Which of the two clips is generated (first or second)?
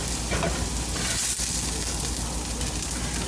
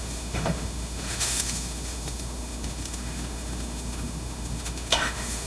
second